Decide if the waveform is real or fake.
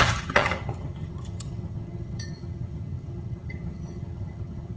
fake